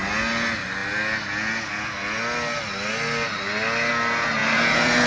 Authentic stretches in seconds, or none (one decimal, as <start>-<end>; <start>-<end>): 0.0-4.4